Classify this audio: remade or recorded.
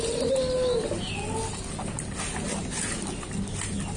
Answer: recorded